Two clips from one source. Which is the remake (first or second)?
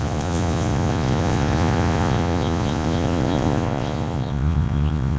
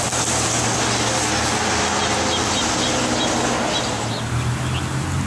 first